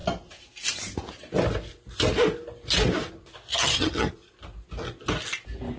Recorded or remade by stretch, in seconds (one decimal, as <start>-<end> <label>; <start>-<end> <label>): 0.0-3.5 recorded; 3.5-4.1 remade; 4.1-5.8 recorded